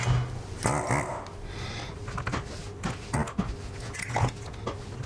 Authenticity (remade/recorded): recorded